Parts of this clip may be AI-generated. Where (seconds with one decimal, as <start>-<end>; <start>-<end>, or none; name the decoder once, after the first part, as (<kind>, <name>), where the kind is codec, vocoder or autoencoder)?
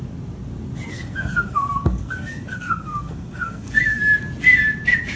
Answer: 0.9-4.0 (codec, SNAC)